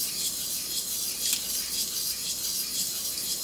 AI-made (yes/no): no